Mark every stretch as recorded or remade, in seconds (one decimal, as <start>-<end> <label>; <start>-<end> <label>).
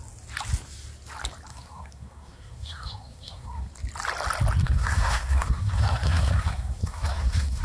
0.0-1.5 recorded; 1.5-3.7 remade; 3.7-4.6 recorded; 4.6-7.6 remade